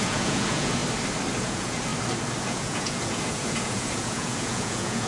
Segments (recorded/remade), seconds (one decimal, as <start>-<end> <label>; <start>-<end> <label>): 0.0-0.8 remade; 0.8-1.4 recorded; 1.4-1.9 remade; 1.9-2.4 recorded; 2.4-5.1 remade